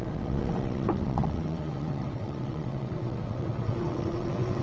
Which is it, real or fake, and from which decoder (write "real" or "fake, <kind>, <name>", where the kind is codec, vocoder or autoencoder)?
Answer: fake, vocoder, WaveNeXt